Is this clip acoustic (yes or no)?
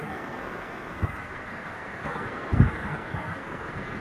no